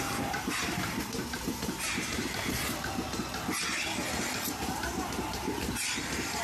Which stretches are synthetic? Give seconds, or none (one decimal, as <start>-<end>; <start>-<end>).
0.0-2.2; 4.4-6.4

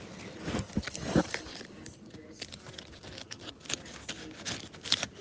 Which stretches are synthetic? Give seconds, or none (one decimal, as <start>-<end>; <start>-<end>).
none

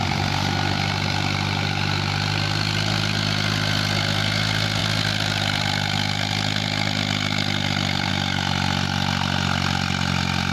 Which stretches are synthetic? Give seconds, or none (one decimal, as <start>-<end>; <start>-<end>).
4.8-8.1

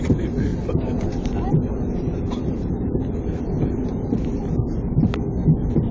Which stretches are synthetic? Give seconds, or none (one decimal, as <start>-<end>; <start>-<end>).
0.0-0.5; 2.5-5.9

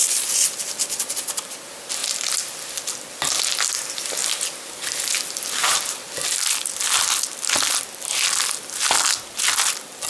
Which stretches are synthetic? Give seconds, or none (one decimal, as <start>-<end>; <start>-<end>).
2.0-2.8

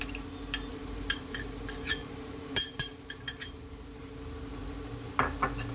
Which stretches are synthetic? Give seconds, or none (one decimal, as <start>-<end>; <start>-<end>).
0.7-4.1